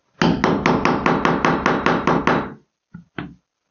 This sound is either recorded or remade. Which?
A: recorded